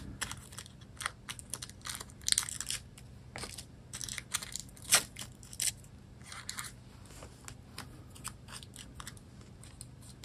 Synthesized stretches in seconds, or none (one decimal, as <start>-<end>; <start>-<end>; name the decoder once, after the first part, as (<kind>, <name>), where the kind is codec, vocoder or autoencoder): none